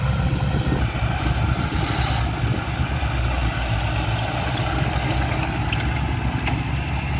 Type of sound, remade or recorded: recorded